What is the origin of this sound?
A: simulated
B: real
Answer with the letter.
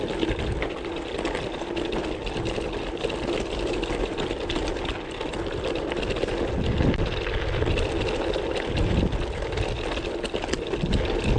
B